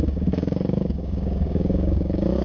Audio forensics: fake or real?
fake